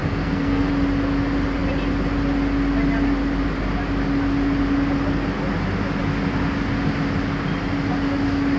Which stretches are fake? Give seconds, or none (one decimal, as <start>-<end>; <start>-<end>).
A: 0.0-0.7